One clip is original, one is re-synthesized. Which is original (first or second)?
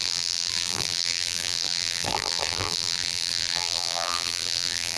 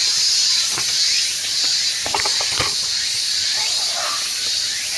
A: second